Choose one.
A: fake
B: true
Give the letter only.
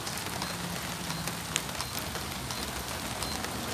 B